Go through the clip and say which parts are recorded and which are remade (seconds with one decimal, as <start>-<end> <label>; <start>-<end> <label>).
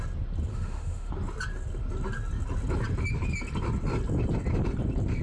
0.0-0.5 recorded; 0.5-1.1 remade; 1.1-5.2 recorded